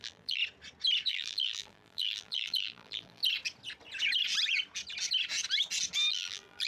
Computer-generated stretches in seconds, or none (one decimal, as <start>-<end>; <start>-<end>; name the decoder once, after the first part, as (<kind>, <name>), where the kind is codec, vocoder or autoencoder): 0.0-0.4 (vocoder, BigVGAN v2); 1.1-3.2; 6.1-6.7